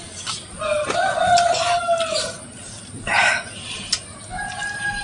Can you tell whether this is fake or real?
real